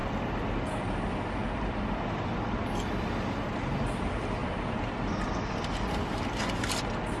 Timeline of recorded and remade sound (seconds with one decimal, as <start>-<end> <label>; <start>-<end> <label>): 0.0-7.2 recorded